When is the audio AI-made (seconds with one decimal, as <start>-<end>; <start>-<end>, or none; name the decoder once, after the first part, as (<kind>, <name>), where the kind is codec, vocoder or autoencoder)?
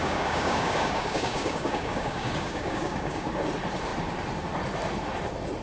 0.0-3.3 (codec, DAC)